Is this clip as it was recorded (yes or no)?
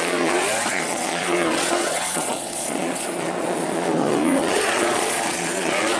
no